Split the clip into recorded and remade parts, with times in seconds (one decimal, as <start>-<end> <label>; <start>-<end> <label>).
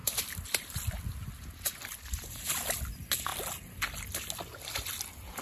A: 0.0-5.4 recorded